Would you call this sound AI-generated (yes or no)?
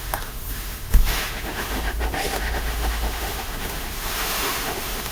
yes